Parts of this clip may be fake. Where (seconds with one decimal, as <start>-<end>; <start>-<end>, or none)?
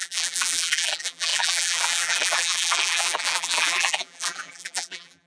0.0-5.3